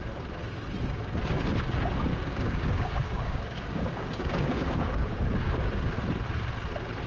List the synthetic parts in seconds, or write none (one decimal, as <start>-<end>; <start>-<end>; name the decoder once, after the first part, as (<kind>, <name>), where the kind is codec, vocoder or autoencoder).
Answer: 2.1-5.9 (codec, DAC)